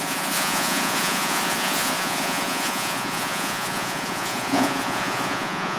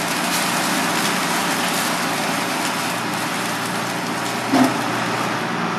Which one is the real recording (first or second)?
second